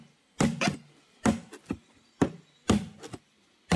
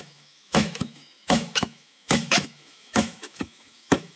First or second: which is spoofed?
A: second